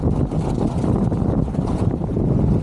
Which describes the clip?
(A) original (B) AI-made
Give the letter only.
A